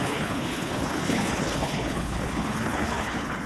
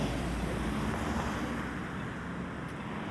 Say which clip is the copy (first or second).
first